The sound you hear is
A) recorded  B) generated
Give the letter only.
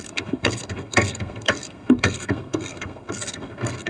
B